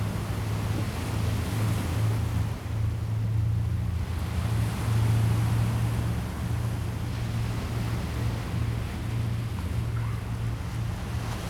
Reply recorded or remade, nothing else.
recorded